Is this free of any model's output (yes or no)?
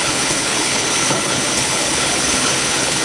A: no